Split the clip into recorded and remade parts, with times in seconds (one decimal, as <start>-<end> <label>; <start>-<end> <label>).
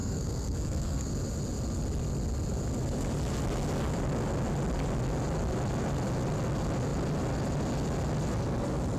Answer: 0.0-1.1 remade; 1.1-9.0 recorded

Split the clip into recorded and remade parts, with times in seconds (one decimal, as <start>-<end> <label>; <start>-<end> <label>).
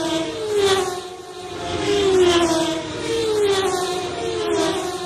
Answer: 0.0-5.1 recorded